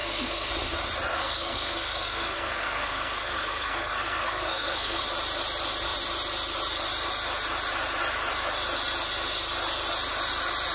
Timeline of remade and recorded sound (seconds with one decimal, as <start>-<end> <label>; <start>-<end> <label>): 0.0-0.5 remade; 0.5-1.1 recorded; 1.1-5.0 remade; 5.0-10.7 recorded